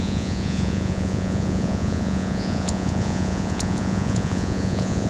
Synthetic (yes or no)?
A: yes